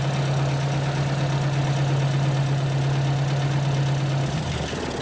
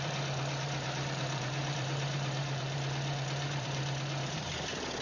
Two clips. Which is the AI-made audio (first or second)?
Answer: second